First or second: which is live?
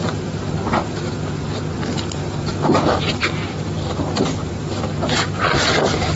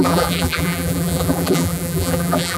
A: first